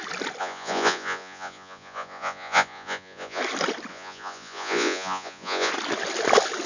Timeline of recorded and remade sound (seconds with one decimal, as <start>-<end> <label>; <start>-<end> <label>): 0.0-0.4 recorded; 0.4-3.4 remade; 3.4-3.9 recorded; 3.9-5.7 remade; 5.7-6.7 recorded